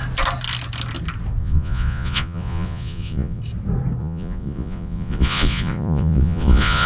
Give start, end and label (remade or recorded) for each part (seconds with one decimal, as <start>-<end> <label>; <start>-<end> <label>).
0.0-1.4 recorded; 1.4-3.4 remade; 3.4-4.0 recorded; 4.0-6.9 remade